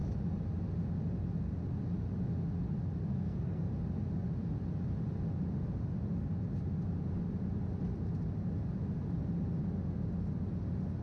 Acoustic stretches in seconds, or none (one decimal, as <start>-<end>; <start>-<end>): 0.0-3.1; 3.7-11.0